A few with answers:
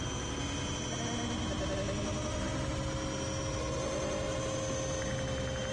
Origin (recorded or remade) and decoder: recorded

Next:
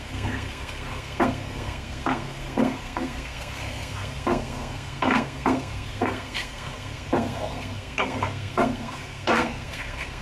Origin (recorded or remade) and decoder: remade, codec, SNAC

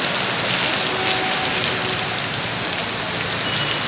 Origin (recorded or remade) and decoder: recorded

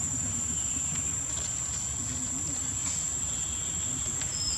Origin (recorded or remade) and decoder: recorded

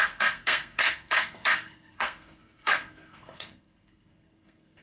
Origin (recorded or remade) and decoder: remade, codec, SNAC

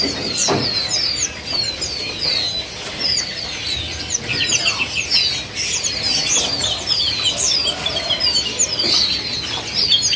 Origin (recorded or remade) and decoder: recorded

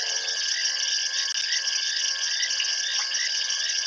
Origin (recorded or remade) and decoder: recorded